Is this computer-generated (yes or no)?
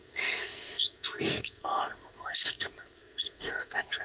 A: yes